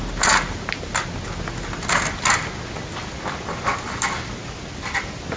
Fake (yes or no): no